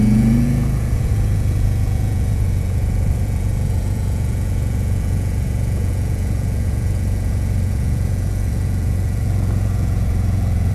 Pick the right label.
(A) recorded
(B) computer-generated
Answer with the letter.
B